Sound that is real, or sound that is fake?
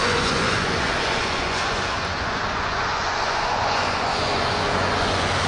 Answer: fake